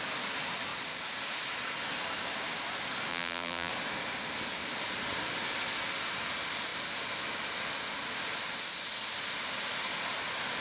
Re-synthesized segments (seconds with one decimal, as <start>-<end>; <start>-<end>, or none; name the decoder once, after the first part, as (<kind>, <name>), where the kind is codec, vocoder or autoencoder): 3.1-3.7 (vocoder, BigVGAN v2)